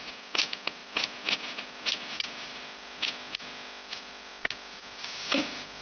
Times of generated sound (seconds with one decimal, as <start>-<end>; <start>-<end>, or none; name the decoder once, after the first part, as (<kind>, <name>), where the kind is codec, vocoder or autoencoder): none